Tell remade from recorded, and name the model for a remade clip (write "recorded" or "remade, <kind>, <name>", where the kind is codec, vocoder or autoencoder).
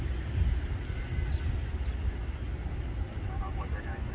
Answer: recorded